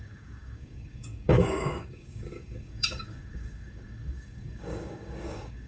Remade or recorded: remade